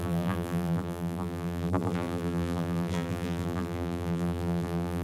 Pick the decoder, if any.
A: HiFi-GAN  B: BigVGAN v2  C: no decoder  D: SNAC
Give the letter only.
B